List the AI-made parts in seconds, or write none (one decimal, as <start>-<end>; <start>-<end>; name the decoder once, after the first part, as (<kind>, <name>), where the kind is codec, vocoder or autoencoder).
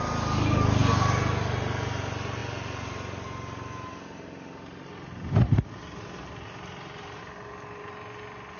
none